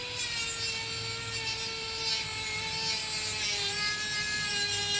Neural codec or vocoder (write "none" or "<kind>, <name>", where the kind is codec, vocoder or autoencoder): none